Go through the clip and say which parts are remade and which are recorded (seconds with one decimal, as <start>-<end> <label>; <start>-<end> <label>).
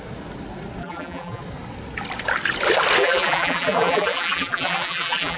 0.0-0.8 recorded; 0.8-1.4 remade; 1.4-3.0 recorded; 3.0-5.4 remade